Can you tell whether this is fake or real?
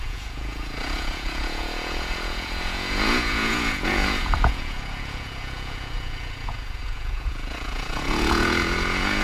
fake